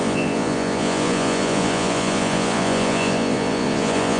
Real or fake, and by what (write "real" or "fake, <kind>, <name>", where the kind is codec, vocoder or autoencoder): fake, vocoder, Vocos